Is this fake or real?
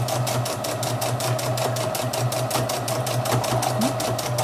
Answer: real